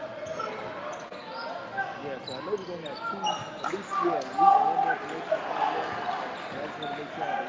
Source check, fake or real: real